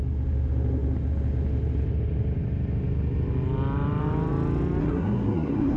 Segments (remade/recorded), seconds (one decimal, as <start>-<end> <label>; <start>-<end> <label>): 0.0-4.8 recorded; 4.8-5.8 remade